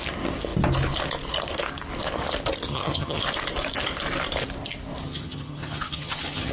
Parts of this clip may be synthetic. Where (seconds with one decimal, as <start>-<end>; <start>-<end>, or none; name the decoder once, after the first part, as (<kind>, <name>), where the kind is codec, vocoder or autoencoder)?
2.7-3.2 (vocoder, HiFi-GAN); 5.0-6.5